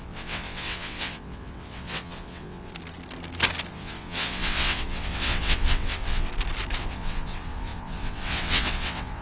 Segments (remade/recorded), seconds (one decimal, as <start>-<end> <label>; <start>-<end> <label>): 0.0-2.7 remade; 2.7-3.7 recorded; 3.7-6.3 remade; 6.3-6.8 recorded; 6.8-9.2 remade